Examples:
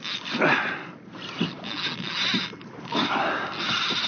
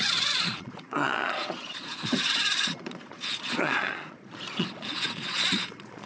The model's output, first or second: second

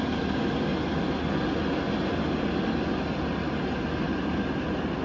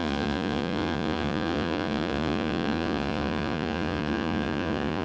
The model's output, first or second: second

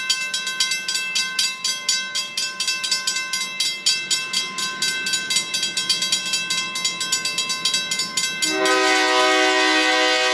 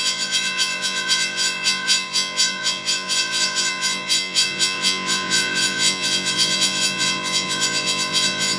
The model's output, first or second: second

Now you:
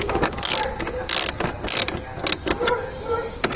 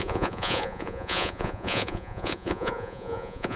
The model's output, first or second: second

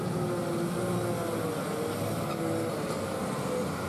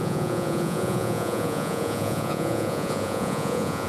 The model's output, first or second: second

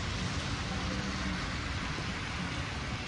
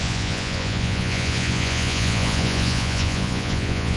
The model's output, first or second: second